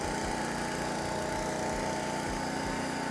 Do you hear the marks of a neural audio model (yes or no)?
no